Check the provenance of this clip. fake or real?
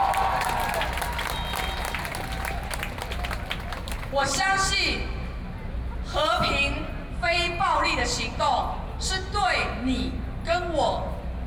real